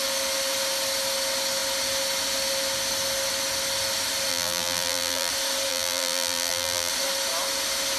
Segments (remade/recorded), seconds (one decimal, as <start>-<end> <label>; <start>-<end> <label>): 0.0-4.3 recorded; 4.3-5.3 remade; 5.3-5.7 recorded; 5.7-6.9 remade; 6.9-8.0 recorded